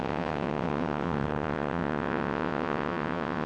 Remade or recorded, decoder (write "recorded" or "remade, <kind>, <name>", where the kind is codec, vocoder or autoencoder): remade, vocoder, WaveNeXt